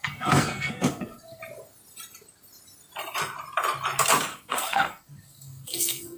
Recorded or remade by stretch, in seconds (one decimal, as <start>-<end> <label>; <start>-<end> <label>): 0.0-1.4 remade; 1.4-4.3 recorded; 4.3-6.2 remade